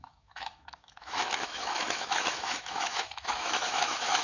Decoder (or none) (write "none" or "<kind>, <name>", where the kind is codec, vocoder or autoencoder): autoencoder, DAC-VAE